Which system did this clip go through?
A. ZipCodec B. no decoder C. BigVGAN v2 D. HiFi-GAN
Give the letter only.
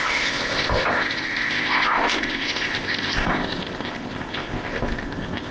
A